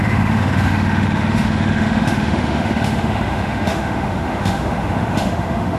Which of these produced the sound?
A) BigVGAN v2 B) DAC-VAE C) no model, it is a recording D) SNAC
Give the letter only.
B